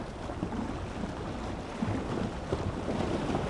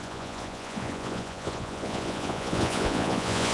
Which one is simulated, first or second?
second